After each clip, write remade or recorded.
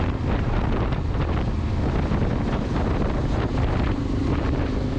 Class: recorded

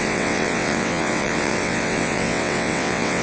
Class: remade